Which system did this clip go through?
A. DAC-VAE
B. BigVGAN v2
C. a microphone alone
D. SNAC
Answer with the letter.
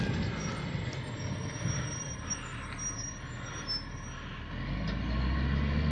C